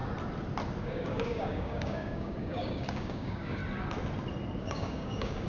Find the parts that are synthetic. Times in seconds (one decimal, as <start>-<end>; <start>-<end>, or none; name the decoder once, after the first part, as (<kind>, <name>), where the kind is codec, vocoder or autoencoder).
0.8-3.6 (codec, DAC); 4.6-5.5